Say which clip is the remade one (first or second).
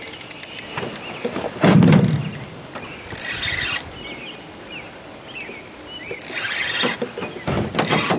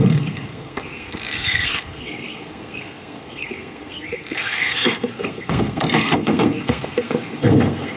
second